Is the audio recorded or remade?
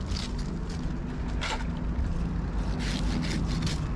recorded